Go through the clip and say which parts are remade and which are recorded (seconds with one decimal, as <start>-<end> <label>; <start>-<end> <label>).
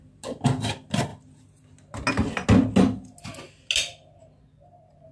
0.0-5.1 recorded